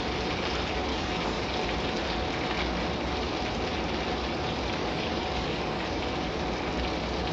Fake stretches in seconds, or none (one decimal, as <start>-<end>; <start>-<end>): 0.9-1.5; 4.8-6.0